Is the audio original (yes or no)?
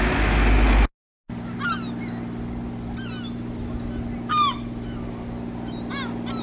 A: yes